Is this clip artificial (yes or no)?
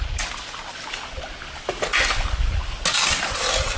no